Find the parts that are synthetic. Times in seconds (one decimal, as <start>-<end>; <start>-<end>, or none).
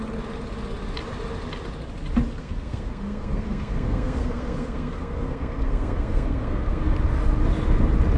2.4-6.9